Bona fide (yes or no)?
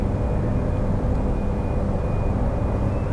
yes